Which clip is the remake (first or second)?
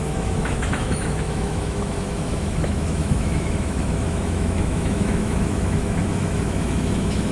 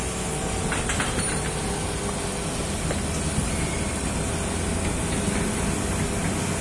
first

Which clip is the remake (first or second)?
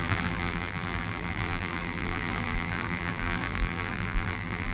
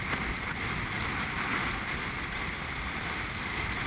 first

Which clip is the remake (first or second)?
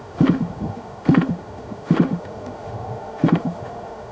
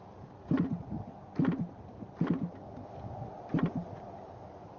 first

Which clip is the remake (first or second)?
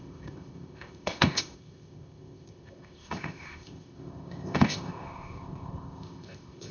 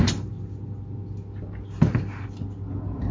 first